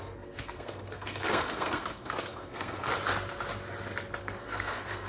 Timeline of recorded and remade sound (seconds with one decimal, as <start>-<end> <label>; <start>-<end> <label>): 0.0-2.9 remade; 2.9-4.2 recorded; 4.2-5.1 remade